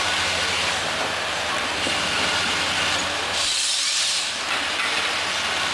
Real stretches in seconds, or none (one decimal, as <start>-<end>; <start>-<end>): 0.0-3.5; 4.8-5.7